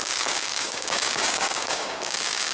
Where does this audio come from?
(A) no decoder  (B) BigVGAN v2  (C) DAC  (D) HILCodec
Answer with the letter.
C